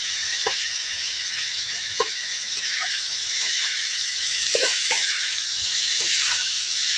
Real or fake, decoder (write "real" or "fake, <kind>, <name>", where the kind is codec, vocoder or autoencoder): fake, autoencoder, DAC-VAE